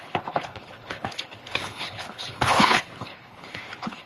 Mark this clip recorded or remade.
remade